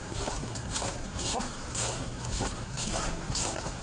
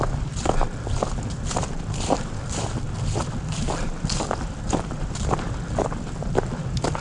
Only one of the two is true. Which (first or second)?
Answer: second